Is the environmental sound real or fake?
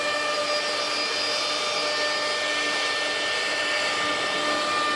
real